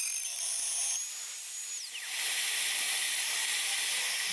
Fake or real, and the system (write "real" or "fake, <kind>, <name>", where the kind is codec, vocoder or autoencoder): real